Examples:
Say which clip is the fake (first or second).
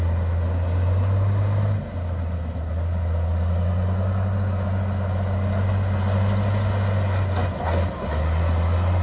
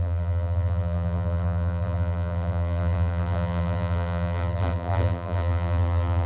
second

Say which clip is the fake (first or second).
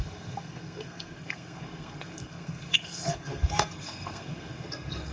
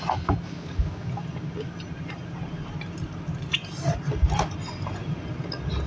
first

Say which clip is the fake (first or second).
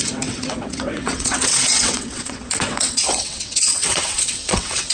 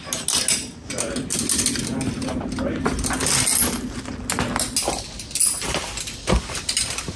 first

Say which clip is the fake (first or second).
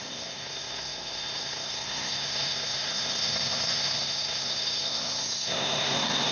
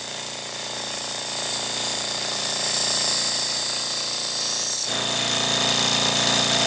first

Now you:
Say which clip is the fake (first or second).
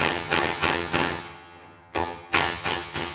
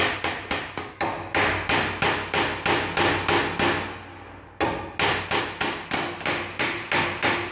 first